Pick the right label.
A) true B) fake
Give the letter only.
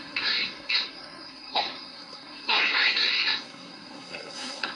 B